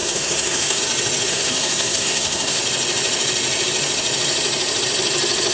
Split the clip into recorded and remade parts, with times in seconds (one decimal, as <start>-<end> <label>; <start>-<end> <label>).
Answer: 0.0-0.8 remade; 0.8-1.3 recorded; 1.3-2.6 remade; 2.6-5.5 recorded